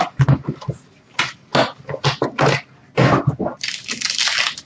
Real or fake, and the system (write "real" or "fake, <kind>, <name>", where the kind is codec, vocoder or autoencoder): real